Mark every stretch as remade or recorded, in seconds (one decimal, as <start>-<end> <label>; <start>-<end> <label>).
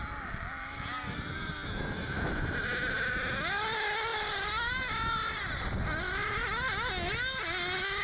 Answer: 0.0-8.0 recorded